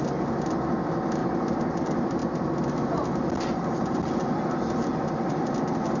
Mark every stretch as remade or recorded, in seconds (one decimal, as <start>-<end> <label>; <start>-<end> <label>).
0.0-1.2 recorded; 1.2-1.8 remade; 1.8-4.9 recorded; 4.9-5.5 remade; 5.5-6.0 recorded